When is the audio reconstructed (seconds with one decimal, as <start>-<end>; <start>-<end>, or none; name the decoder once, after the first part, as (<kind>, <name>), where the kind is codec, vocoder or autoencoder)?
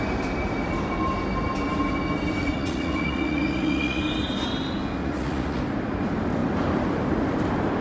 2.4-4.0 (vocoder, Vocos); 5.0-5.6